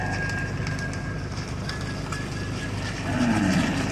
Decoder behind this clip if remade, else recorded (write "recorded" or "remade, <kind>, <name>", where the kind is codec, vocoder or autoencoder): recorded